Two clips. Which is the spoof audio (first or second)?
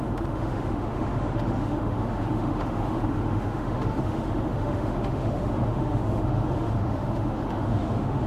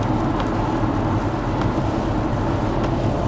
first